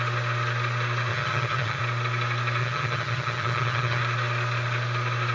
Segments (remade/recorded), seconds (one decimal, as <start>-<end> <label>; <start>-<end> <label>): 0.0-1.1 recorded; 1.1-1.8 remade; 1.8-2.6 recorded; 2.6-4.0 remade; 4.0-5.3 recorded

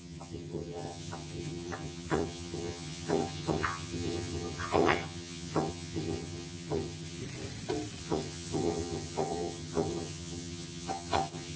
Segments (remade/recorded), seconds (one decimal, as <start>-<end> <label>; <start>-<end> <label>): 0.0-7.2 remade; 7.2-8.0 recorded; 8.0-11.6 remade

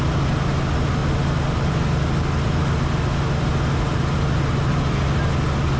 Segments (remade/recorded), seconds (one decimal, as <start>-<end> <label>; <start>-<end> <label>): 0.0-5.8 recorded